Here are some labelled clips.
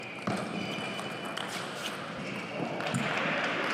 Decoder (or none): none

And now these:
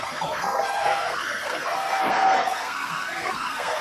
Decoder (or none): codec, SNAC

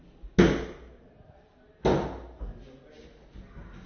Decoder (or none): none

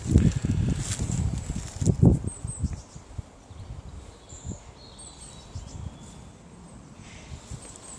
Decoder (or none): none